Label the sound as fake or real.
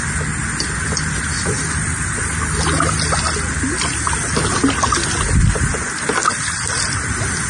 real